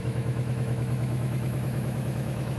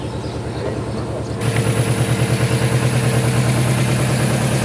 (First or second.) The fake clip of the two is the first